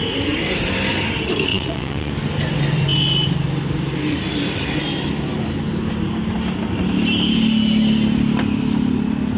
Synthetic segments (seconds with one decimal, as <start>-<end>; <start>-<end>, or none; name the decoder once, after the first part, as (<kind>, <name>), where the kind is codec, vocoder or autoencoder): 1.5-2.1 (vocoder, WaveNeXt)